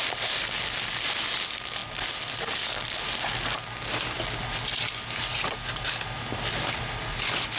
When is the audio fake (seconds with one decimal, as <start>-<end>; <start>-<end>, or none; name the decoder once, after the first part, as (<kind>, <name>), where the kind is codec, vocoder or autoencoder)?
none

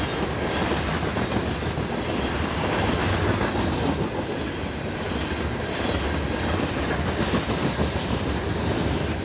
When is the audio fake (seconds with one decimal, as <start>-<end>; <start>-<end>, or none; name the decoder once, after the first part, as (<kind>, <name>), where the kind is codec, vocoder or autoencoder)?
7.8-8.5 (vocoder, BigVGAN v2)